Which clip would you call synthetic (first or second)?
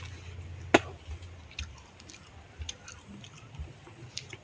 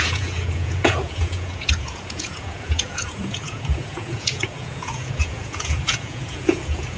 second